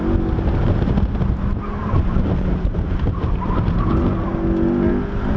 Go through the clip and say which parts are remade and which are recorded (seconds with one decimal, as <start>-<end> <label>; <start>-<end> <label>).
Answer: 0.0-1.8 recorded; 1.8-3.9 remade; 3.9-5.4 recorded